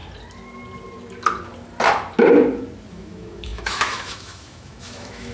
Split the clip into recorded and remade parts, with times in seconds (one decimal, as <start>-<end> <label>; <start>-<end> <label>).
0.0-2.9 recorded; 2.9-5.3 remade